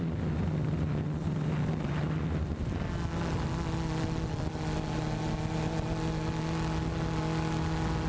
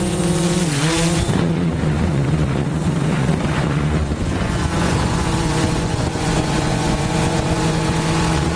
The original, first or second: first